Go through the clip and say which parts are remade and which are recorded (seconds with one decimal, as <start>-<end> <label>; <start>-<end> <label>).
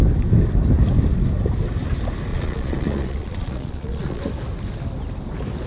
0.0-2.3 recorded; 2.3-4.2 remade; 4.2-5.7 recorded